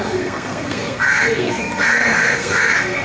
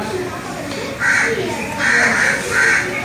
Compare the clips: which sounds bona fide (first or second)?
second